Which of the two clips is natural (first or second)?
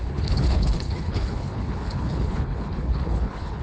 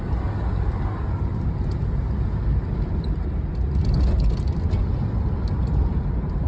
second